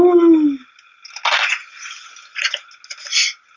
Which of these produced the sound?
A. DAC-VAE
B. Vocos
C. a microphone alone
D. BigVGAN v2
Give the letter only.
C